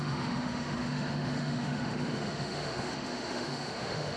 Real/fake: fake